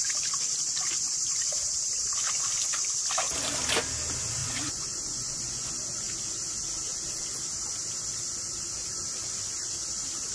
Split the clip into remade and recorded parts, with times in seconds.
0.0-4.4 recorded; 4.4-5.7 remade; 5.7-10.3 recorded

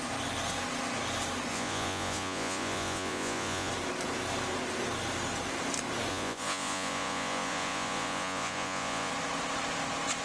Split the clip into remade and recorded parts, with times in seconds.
0.0-1.5 recorded; 1.5-3.7 remade; 3.7-6.1 recorded; 6.1-9.1 remade; 9.1-10.2 recorded

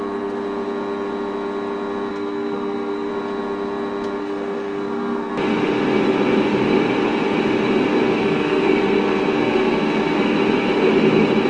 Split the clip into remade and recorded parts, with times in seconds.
0.0-2.1 recorded; 2.1-3.1 remade; 3.1-4.2 recorded; 4.2-5.3 remade; 5.3-8.2 recorded; 8.2-10.2 remade; 10.2-11.5 recorded

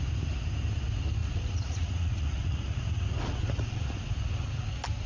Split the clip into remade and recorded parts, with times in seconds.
0.0-1.2 recorded; 1.2-4.0 remade; 4.0-5.1 recorded

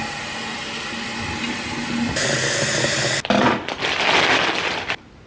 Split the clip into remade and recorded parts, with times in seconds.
0.0-5.3 recorded

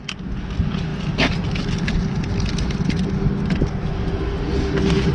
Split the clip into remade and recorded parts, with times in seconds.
0.0-5.1 recorded

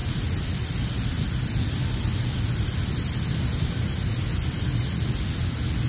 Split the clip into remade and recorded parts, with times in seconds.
0.0-5.9 recorded